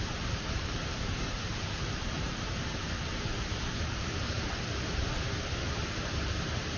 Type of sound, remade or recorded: remade